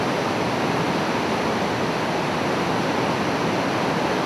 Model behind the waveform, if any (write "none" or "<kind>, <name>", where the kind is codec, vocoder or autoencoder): none